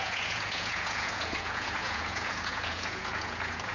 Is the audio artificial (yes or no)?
yes